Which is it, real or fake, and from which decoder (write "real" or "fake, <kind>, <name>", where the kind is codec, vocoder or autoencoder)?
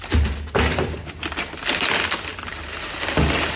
real